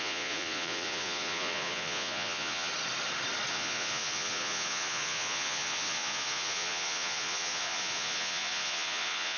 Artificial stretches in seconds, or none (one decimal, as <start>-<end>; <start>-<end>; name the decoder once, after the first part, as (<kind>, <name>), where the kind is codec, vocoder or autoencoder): 0.0-2.7 (vocoder, Vocos); 3.5-9.4